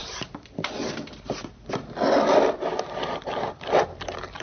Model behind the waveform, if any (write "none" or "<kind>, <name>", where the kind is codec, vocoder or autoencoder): none